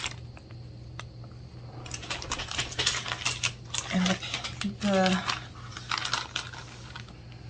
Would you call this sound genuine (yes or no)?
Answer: yes